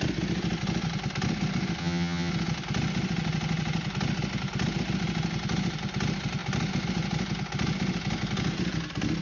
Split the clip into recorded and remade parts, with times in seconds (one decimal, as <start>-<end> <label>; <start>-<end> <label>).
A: 0.0-1.8 recorded; 1.8-2.3 remade; 2.3-9.2 recorded

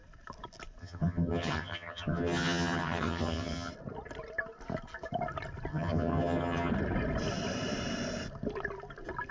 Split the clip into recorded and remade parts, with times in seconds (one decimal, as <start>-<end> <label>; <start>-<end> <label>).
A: 0.0-0.8 recorded; 0.8-3.7 remade; 3.7-5.7 recorded; 5.7-6.7 remade; 6.7-9.3 recorded

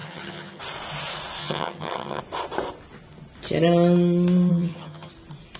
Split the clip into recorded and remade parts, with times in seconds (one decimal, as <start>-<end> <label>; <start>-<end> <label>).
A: 0.0-0.6 remade; 0.6-1.4 recorded; 1.4-2.2 remade; 2.2-4.5 recorded; 4.5-5.1 remade; 5.1-5.6 recorded

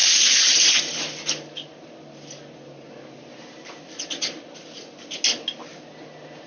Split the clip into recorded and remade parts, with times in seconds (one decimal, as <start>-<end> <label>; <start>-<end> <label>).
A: 0.0-6.5 recorded